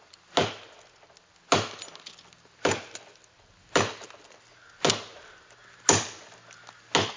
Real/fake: real